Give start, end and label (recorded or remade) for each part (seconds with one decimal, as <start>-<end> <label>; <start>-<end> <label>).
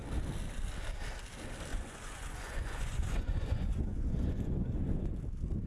0.0-1.7 recorded; 1.7-5.1 remade; 5.1-5.7 recorded